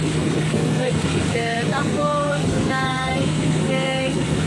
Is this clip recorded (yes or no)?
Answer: no